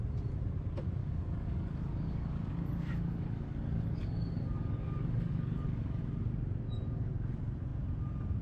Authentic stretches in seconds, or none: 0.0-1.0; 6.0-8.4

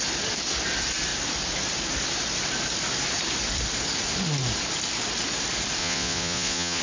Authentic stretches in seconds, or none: 0.0-5.8

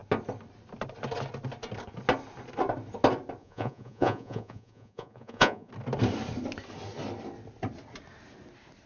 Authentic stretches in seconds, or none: 0.0-3.4; 5.7-8.9

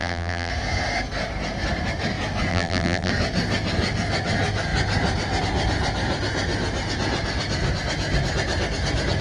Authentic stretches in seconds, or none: 0.5-2.5; 3.1-9.2

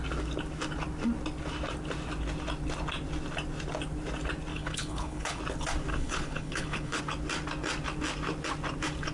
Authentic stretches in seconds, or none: 0.0-4.5; 5.4-5.9; 7.0-9.1